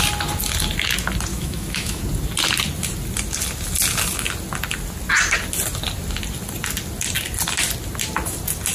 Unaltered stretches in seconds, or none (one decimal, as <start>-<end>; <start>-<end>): 0.0-1.3; 2.0-8.7

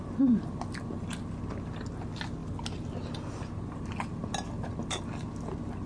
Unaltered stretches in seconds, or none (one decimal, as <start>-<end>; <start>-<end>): 0.0-5.9

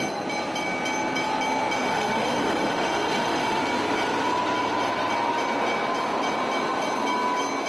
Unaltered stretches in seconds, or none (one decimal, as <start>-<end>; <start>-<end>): 0.0-1.8; 3.6-7.7

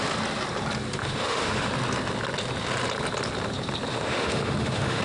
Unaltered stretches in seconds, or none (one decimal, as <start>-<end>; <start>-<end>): 0.0-1.0; 1.7-3.9

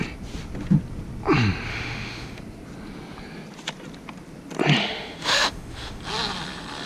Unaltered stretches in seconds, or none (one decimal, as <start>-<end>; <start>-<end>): 0.0-1.7; 2.4-4.8; 6.0-6.9